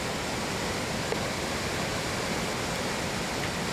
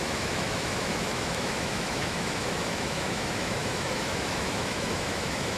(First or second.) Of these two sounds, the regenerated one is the second